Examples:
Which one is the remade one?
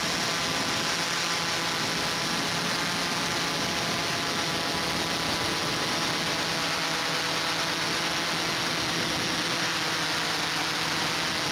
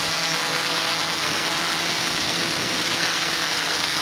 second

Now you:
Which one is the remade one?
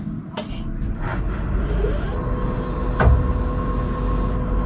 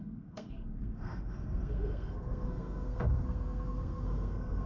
second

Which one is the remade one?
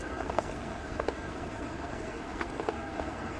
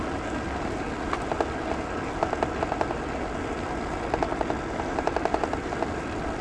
first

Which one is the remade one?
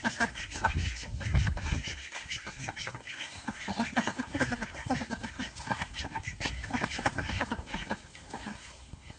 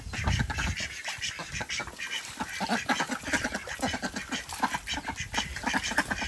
first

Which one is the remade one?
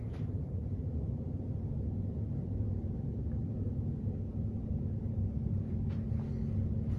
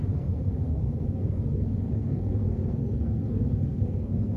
second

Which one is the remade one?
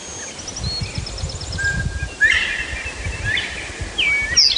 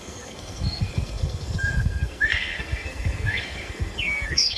second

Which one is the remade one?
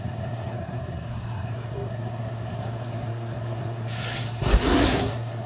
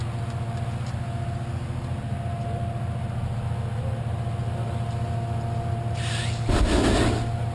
first